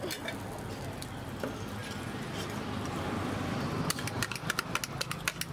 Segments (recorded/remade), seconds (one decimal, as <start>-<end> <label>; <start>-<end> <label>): 0.0-5.5 recorded